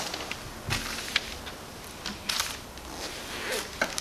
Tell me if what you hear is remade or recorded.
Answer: recorded